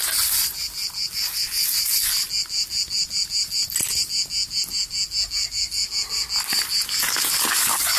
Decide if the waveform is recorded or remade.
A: recorded